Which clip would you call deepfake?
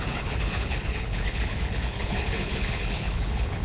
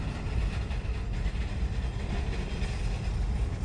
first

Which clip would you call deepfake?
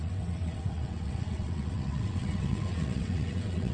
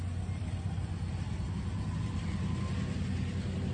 first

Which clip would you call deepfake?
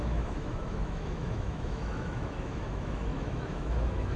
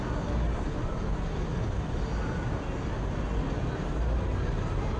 first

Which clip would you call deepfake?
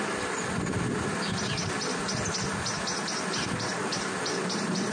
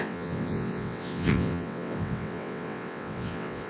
second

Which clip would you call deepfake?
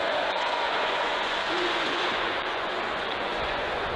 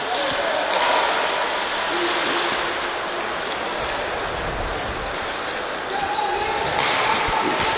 first